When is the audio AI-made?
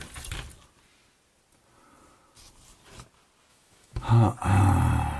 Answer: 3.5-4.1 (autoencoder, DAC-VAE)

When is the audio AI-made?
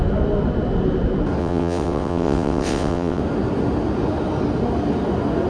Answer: 1.4-3.2 (vocoder, WaveNeXt)